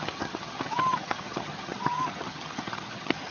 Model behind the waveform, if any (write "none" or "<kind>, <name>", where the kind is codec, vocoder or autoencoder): vocoder, HiFi-GAN